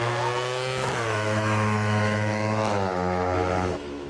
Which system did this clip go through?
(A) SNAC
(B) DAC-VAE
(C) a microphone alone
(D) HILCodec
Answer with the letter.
B